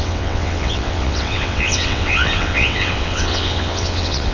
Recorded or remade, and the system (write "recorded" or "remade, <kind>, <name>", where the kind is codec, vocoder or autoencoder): remade, vocoder, WaveNeXt